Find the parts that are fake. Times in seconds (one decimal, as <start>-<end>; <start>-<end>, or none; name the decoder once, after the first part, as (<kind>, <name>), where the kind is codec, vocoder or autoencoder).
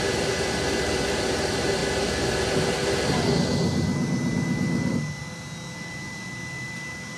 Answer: none